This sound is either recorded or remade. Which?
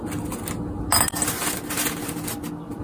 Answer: recorded